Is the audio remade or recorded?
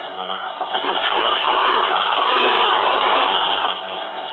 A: remade